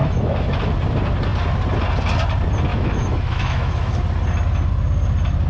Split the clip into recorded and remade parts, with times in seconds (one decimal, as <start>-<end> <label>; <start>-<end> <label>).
0.0-0.6 remade; 0.6-2.7 recorded; 2.7-4.0 remade; 4.0-5.5 recorded